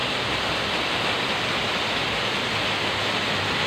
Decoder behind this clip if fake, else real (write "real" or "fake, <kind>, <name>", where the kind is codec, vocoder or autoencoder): real